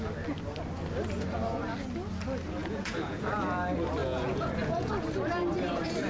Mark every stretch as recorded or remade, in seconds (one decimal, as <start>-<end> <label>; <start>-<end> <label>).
0.0-2.6 recorded; 2.6-3.2 remade; 3.2-4.0 recorded; 4.0-4.9 remade; 4.9-6.1 recorded